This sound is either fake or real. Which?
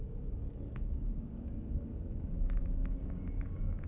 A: fake